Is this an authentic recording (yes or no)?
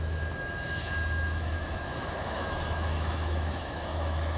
no